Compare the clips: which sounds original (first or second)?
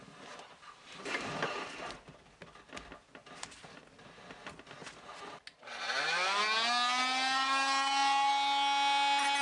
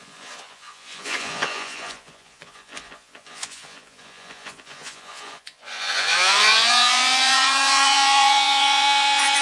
first